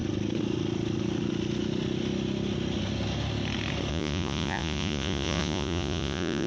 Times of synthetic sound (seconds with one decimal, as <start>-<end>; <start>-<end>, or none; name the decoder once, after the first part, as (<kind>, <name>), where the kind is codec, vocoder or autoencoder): 3.9-6.5 (vocoder, Vocos)